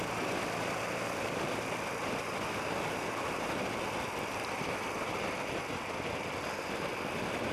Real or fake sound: real